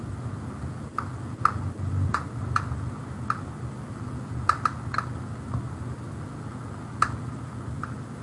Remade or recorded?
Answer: recorded